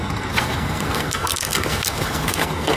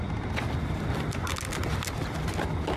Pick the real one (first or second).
second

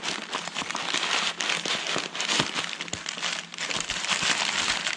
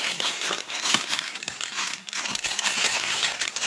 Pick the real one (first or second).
first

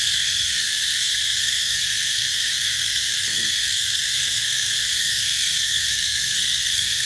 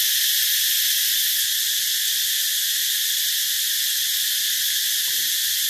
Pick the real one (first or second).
second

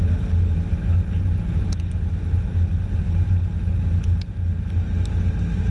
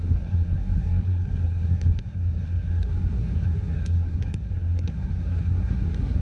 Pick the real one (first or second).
first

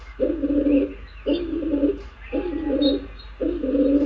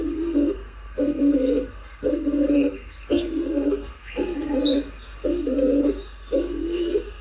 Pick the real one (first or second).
first